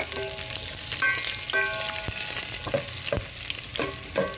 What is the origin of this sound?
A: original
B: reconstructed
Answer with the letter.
A